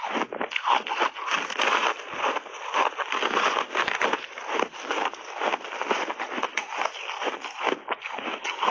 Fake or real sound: real